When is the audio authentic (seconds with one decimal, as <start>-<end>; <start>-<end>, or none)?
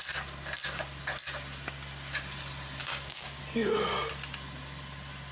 0.0-2.8; 3.4-5.3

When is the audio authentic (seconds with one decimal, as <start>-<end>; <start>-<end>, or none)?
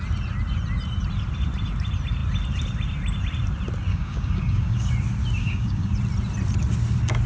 0.0-3.9; 4.9-5.4; 5.9-7.3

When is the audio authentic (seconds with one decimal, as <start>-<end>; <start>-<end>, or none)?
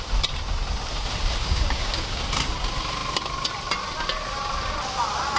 0.0-1.4; 2.2-5.4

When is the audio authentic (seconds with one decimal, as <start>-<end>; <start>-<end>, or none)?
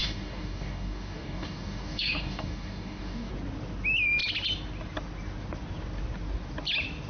3.3-7.1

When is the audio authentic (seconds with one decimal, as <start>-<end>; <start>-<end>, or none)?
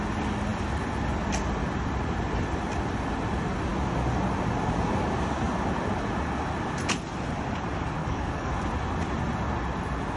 0.0-8.0; 8.5-10.2